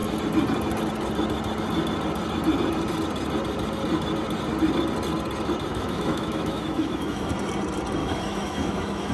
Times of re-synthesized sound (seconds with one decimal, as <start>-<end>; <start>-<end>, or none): 5.7-7.3; 8.0-9.1